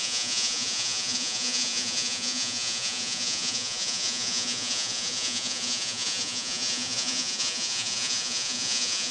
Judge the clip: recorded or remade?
remade